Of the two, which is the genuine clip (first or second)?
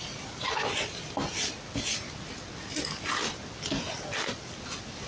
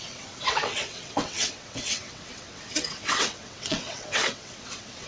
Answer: first